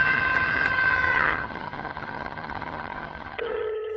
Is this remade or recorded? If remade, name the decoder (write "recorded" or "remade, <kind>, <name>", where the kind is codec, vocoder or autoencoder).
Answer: remade, vocoder, HiFi-GAN